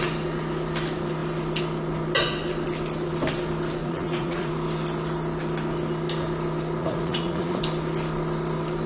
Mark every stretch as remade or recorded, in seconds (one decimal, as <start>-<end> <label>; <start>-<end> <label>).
0.0-3.8 recorded; 3.8-4.5 remade; 4.5-6.8 recorded; 6.8-7.6 remade; 7.6-8.9 recorded